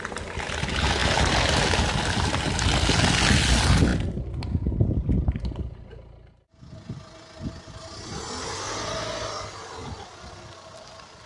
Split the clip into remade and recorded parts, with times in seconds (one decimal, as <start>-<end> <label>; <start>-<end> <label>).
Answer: 0.0-11.3 recorded